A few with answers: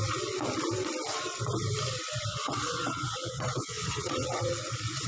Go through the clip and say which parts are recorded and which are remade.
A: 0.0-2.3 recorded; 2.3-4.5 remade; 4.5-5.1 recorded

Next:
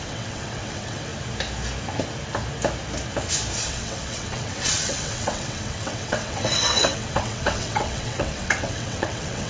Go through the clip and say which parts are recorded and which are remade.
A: 0.0-1.1 remade; 1.1-3.6 recorded; 3.6-9.5 remade

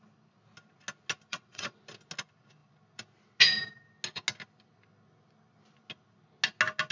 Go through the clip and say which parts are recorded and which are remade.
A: 0.0-1.3 recorded; 1.3-1.8 remade; 1.8-6.9 recorded